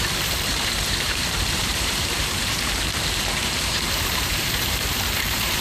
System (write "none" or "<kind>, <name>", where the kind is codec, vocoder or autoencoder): vocoder, BigVGAN v2